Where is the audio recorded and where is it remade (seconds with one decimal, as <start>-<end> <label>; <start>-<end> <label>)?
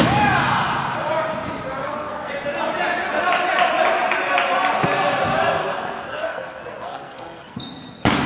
0.0-1.8 recorded; 1.8-2.3 remade; 2.3-5.6 recorded; 5.6-7.6 remade; 7.6-8.3 recorded